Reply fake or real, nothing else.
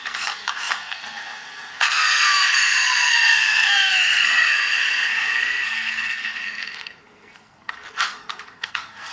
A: fake